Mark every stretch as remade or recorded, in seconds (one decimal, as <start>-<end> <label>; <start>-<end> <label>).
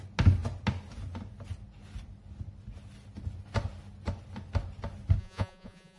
0.0-5.2 recorded; 5.2-6.0 remade